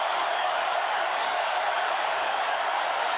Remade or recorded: remade